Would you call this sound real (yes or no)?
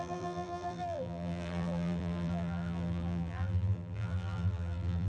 no